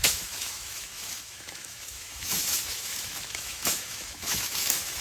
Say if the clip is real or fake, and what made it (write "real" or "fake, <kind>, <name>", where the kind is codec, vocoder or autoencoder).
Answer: fake, autoencoder, DAC-VAE